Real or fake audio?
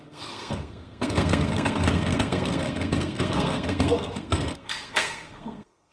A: fake